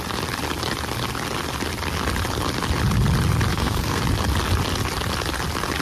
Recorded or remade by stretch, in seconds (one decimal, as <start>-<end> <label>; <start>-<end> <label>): 0.0-3.5 recorded; 3.5-4.0 remade; 4.0-5.8 recorded